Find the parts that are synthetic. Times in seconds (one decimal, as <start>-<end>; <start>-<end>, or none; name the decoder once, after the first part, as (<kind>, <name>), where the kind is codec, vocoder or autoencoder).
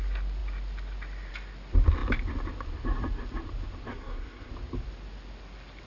3.9-4.5 (codec, SNAC)